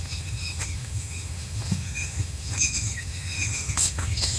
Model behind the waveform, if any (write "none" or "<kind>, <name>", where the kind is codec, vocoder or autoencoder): autoencoder, DAC-VAE